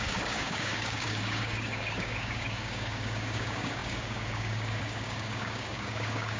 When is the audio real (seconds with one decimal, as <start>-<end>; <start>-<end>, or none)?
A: none